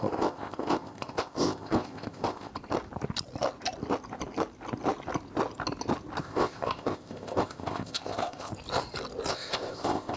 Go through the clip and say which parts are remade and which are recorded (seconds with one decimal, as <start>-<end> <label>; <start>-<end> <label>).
0.0-2.5 remade; 2.5-6.2 recorded; 6.2-8.5 remade; 8.5-9.3 recorded; 9.3-10.2 remade